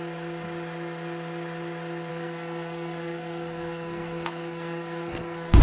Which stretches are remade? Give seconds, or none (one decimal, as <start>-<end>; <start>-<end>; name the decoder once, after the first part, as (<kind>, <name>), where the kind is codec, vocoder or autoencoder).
2.1-5.6 (codec, SNAC)